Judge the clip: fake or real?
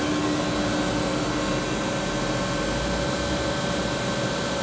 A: real